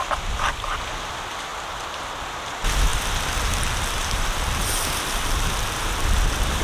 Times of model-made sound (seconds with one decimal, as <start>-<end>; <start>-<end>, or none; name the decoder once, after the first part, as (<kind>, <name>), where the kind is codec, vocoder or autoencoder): none